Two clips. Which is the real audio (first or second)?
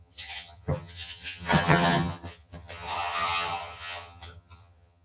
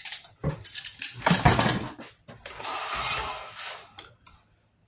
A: second